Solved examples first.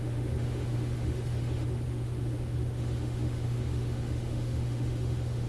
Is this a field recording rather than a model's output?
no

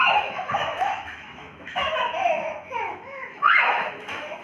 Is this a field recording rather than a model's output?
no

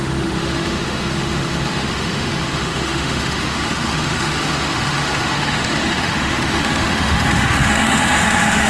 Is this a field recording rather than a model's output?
no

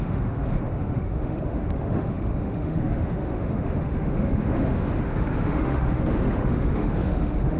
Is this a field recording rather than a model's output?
no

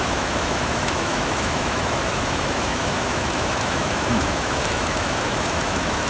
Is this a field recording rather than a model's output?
no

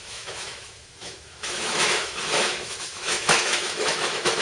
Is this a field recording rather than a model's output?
no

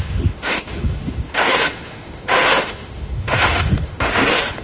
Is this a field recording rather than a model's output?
no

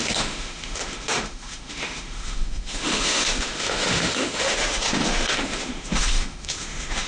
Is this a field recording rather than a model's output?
no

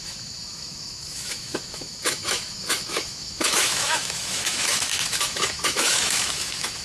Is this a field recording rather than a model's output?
no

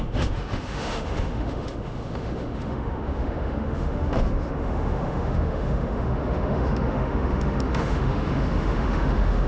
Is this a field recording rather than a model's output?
no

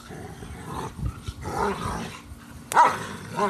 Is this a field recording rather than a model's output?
yes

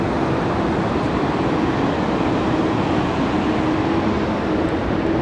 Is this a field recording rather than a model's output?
yes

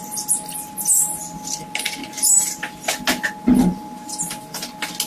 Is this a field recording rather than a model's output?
yes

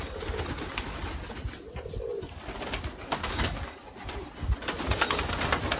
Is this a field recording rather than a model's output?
yes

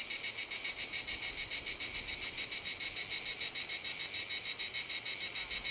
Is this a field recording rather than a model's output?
yes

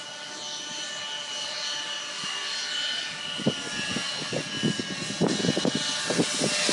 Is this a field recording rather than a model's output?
yes